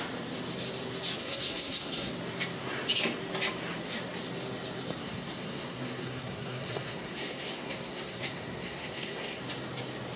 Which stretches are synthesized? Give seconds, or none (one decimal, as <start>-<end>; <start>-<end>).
1.2-2.1; 5.0-9.4